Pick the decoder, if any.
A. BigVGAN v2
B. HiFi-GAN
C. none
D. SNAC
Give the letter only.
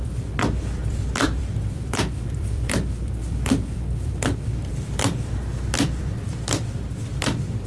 A